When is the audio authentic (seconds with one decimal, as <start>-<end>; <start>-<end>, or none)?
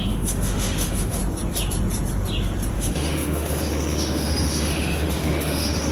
1.2-2.7